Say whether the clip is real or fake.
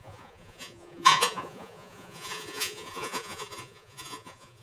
fake